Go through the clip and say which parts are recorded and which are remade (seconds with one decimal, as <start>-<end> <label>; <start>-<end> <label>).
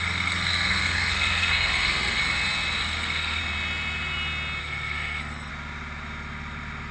0.0-2.2 remade; 2.2-2.8 recorded; 2.8-3.4 remade; 3.4-4.6 recorded; 4.6-5.5 remade; 5.5-6.9 recorded